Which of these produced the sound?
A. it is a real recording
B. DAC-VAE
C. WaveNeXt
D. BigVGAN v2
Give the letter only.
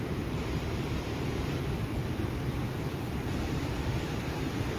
D